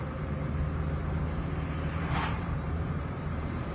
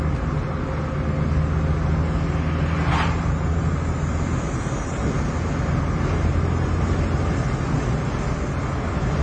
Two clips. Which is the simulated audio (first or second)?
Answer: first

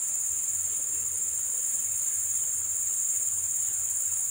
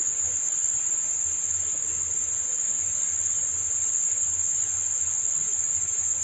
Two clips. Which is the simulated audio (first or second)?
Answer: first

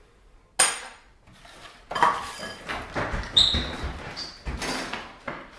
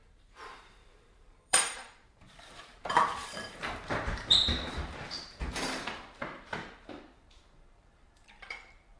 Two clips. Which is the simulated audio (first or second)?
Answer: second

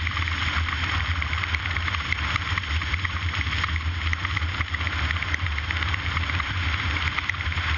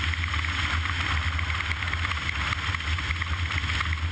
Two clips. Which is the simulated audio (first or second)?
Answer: first